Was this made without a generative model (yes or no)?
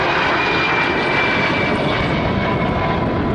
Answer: yes